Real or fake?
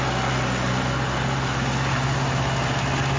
real